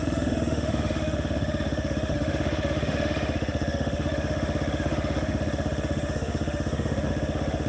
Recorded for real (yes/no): no